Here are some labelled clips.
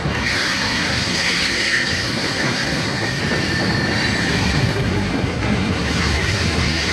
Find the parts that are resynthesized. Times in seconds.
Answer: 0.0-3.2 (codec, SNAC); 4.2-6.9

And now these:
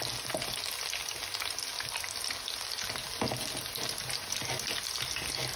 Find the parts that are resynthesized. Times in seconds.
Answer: none